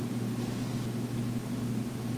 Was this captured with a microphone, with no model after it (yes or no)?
yes